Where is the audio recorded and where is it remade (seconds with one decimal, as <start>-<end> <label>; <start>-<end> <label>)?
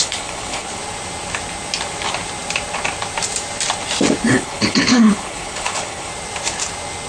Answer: 0.0-0.8 remade; 0.8-4.3 recorded; 4.3-6.1 remade; 6.1-7.1 recorded